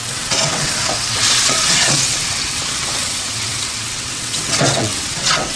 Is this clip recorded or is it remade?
remade